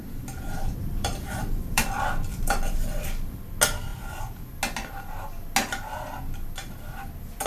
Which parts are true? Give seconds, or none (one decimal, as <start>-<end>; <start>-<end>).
0.0-0.8; 1.8-2.3; 3.4-7.5